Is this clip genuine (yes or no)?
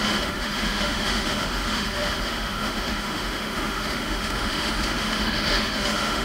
no